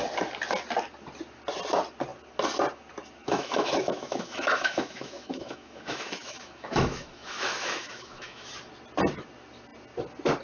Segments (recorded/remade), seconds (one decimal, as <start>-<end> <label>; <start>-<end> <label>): 0.0-3.2 recorded; 3.2-8.5 remade; 8.5-10.4 recorded